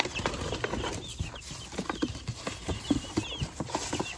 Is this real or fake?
real